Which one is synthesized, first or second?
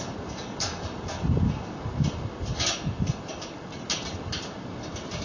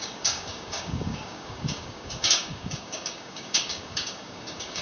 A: second